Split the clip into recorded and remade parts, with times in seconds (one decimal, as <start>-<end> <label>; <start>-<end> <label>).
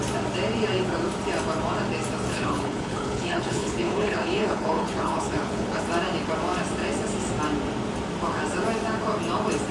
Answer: 0.0-2.3 recorded; 2.3-5.8 remade; 5.8-9.7 recorded